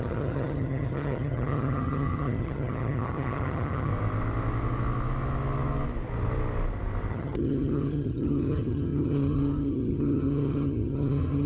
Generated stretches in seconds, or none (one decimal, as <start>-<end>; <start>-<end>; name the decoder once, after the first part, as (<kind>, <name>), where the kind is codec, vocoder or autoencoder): 0.0-3.9 (vocoder, HiFi-GAN); 7.1-11.5